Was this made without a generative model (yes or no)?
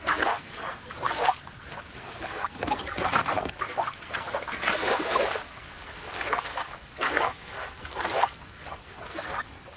no